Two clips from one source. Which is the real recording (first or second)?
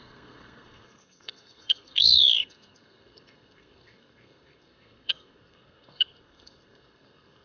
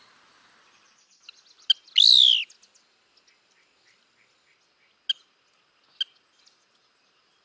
second